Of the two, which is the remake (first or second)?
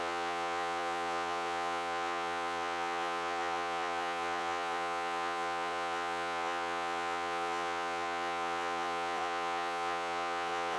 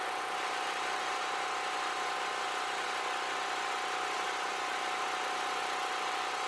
first